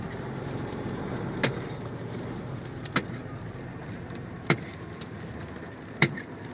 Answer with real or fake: fake